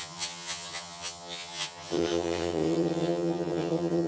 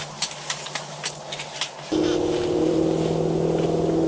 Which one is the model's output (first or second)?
first